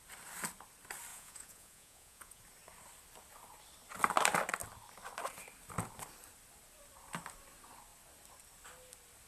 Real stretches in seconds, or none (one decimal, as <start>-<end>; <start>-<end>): 0.0-1.1; 2.4-9.3